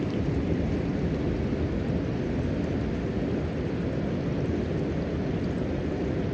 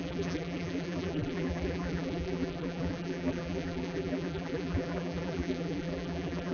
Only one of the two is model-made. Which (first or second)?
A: second